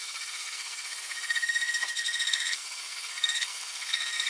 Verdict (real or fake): fake